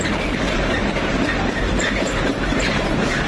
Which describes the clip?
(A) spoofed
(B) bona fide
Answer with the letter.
B